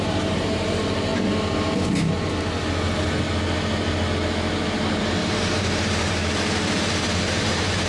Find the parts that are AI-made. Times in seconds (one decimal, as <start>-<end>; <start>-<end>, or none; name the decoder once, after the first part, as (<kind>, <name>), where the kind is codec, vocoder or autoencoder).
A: 0.0-1.1 (vocoder, BigVGAN v2); 5.0-7.9